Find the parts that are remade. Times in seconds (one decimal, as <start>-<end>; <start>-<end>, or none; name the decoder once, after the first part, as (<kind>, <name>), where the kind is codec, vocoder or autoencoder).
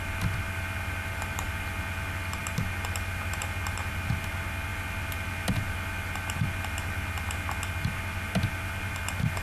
none